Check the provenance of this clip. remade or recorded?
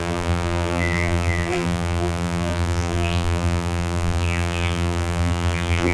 remade